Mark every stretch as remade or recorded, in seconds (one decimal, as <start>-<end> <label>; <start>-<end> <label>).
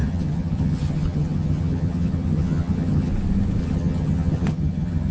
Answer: 0.0-3.1 remade; 3.1-3.6 recorded; 3.6-5.1 remade